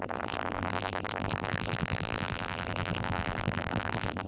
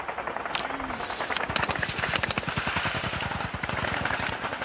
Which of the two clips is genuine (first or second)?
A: second